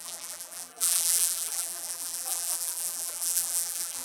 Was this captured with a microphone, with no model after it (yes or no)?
no